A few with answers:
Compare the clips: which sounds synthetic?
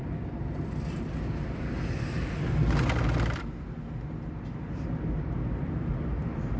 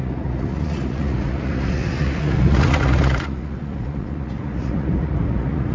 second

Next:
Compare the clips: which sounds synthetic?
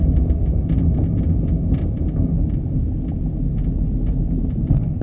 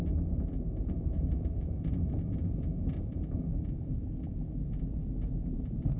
second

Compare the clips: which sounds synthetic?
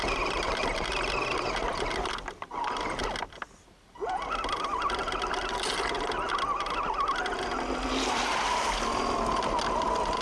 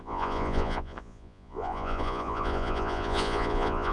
second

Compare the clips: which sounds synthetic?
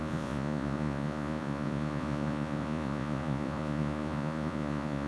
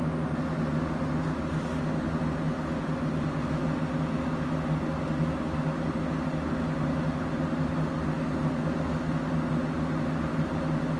first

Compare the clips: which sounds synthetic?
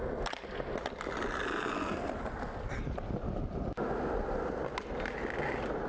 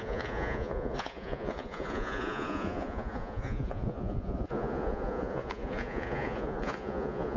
second